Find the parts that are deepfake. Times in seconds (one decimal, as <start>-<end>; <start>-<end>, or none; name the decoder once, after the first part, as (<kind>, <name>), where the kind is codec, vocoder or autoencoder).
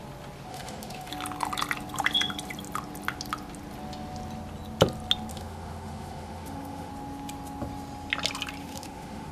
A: 0.5-1.1 (autoencoder, DAC-VAE); 5.3-6.9; 8.6-9.3